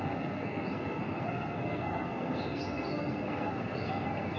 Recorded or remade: remade